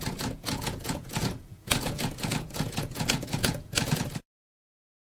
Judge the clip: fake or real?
fake